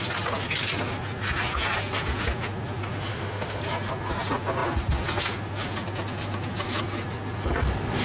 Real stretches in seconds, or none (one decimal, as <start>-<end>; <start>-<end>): 0.0-3.1; 3.6-8.0